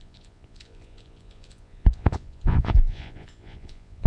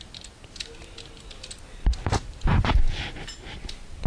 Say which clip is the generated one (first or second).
first